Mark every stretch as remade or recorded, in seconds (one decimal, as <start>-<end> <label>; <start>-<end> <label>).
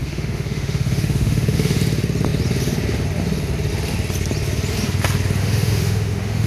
0.0-1.8 remade; 1.8-5.4 recorded; 5.4-6.5 remade